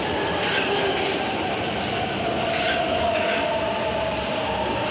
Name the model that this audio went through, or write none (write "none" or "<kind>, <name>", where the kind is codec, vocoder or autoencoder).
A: none